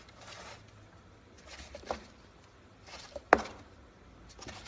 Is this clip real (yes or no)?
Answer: yes